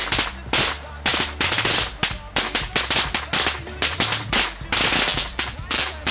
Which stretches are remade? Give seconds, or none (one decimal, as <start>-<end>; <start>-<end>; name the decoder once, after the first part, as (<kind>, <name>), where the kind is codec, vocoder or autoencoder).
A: 5.1-6.1 (vocoder, BigVGAN v2)